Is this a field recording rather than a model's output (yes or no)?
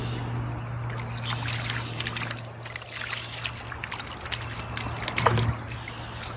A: yes